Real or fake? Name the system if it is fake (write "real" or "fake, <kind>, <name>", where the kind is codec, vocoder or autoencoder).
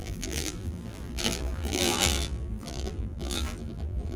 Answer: fake, vocoder, BigVGAN v2